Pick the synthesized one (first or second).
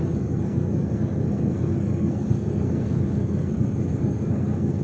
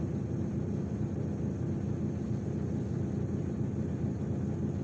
first